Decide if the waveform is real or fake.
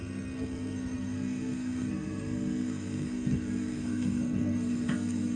fake